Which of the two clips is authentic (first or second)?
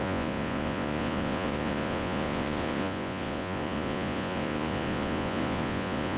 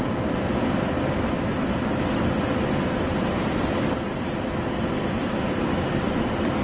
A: second